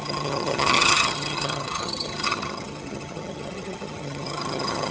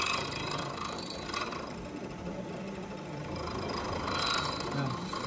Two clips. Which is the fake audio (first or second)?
first